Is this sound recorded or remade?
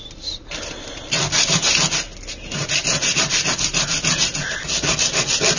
recorded